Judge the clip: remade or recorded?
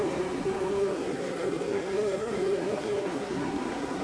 remade